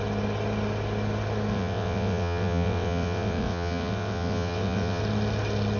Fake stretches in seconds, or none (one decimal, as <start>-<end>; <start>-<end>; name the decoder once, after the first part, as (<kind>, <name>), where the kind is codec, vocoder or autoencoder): 1.5-5.0 (vocoder, WaveNeXt)